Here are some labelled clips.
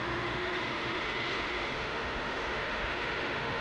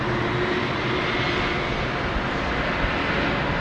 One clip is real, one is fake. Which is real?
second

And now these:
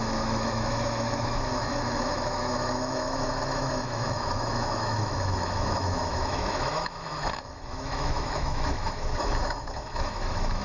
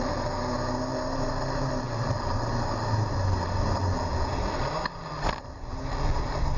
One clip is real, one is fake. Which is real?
second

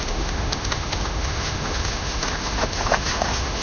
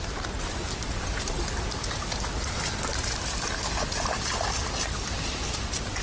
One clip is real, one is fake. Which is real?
second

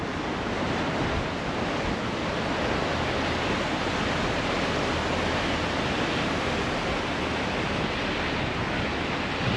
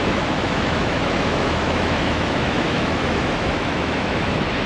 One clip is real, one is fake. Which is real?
first